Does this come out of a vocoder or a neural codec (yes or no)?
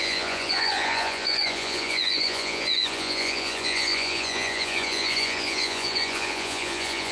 yes